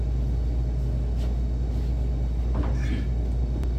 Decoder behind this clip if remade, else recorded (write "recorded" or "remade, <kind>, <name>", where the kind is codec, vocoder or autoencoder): recorded